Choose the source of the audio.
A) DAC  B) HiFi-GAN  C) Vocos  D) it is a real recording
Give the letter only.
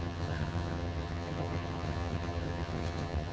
B